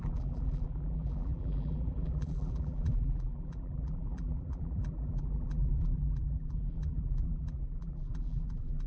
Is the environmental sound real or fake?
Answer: fake